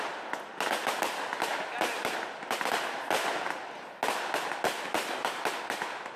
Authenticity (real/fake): real